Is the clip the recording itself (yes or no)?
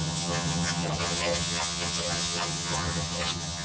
no